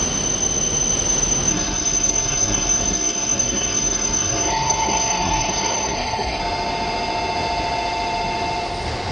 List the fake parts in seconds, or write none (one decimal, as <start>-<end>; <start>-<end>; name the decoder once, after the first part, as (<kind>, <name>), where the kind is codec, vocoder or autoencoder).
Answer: 1.5-6.4 (codec, SNAC)